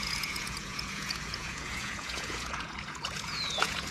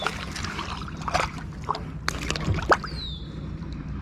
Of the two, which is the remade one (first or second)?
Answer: first